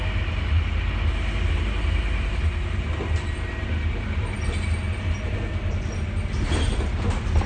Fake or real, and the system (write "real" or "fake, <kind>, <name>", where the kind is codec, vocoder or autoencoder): real